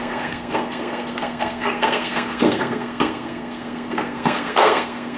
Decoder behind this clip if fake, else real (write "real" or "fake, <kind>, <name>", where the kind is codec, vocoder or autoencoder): fake, codec, SNAC